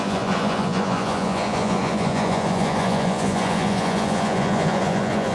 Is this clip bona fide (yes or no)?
no